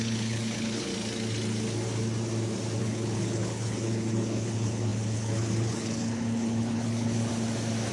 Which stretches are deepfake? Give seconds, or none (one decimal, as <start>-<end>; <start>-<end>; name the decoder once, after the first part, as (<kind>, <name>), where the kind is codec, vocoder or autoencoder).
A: 0.0-0.9 (codec, HILCodec); 2.8-7.3